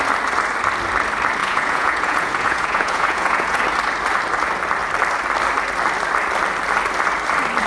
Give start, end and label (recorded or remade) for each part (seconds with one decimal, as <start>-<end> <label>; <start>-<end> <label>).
0.0-1.4 recorded; 1.4-3.6 remade; 3.6-7.7 recorded